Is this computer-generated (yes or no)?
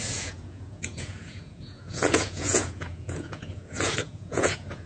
yes